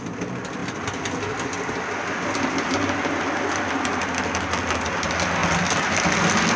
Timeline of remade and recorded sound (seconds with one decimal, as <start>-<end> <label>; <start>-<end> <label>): 0.0-6.6 recorded